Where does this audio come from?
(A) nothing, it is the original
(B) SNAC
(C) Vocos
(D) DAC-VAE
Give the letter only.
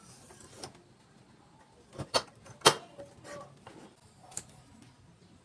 A